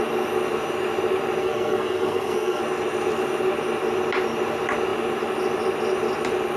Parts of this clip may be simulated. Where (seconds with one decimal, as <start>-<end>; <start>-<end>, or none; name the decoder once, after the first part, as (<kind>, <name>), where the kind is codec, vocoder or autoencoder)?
1.4-2.6 (codec, SNAC)